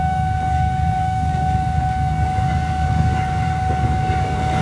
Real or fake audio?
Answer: fake